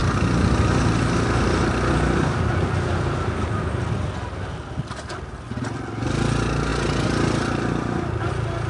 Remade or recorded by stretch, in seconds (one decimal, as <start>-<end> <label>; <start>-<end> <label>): 0.0-8.7 recorded